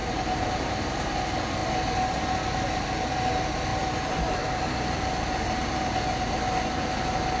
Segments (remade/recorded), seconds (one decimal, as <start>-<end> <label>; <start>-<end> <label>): 0.0-1.1 remade; 1.1-3.7 recorded; 3.7-6.4 remade; 6.4-7.4 recorded